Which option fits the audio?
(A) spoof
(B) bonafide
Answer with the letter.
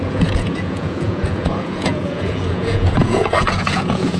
A